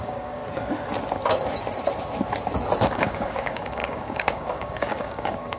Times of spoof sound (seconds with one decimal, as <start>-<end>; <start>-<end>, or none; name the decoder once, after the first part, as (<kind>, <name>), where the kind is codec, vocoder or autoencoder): 0.0-0.4 (codec, DAC); 2.8-5.6